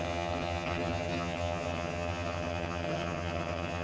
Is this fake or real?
fake